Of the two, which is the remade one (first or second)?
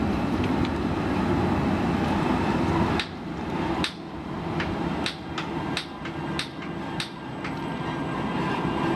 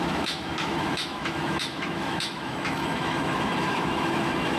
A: second